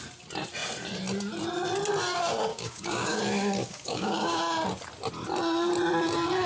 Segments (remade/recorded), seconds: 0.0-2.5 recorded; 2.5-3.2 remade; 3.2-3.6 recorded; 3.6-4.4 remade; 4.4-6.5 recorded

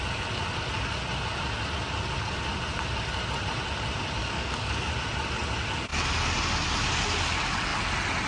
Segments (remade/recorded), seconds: 0.0-4.2 recorded; 4.2-4.9 remade; 4.9-8.3 recorded

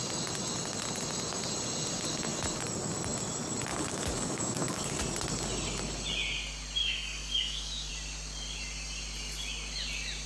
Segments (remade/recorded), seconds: 0.0-3.7 recorded; 3.7-5.0 remade; 5.0-6.8 recorded; 6.8-7.9 remade; 7.9-10.3 recorded

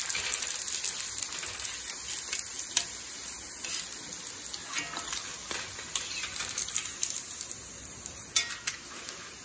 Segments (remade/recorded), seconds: 0.0-9.4 recorded

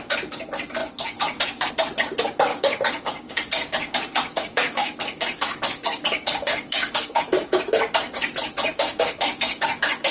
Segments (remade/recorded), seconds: 0.0-2.5 recorded; 2.5-7.2 remade; 7.2-8.7 recorded; 8.7-10.1 remade

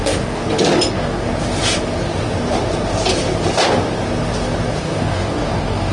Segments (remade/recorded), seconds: 0.0-0.4 remade; 0.4-0.9 recorded; 0.9-1.3 remade; 1.3-4.8 recorded; 4.8-5.9 remade